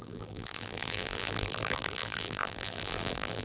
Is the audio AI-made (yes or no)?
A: yes